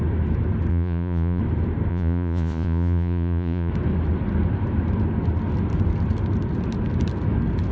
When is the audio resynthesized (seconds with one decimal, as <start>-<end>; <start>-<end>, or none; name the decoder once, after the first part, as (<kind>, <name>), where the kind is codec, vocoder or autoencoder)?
0.7-1.4 (vocoder, Vocos); 1.9-3.7